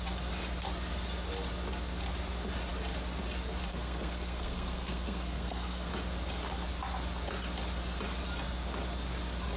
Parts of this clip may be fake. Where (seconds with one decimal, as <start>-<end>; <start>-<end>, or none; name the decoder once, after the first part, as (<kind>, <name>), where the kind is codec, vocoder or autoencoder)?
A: 3.7-5.9 (codec, SNAC)